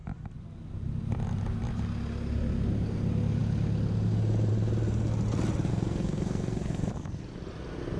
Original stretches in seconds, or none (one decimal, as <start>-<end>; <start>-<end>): 0.0-5.7; 7.2-8.0